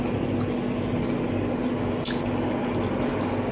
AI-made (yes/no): no